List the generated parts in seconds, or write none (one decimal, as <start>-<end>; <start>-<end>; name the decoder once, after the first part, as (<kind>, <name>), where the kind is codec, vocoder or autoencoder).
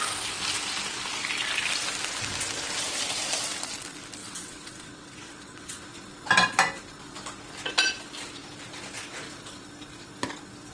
4.2-5.8 (vocoder, WaveNeXt)